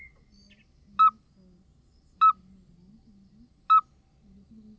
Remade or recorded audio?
recorded